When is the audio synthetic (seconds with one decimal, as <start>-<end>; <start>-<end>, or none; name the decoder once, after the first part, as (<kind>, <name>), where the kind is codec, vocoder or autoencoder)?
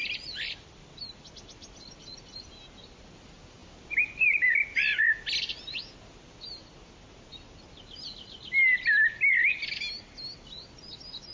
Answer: 0.0-1.1 (vocoder, BigVGAN v2)